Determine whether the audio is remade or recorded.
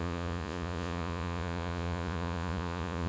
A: remade